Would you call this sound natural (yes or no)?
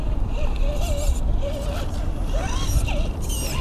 yes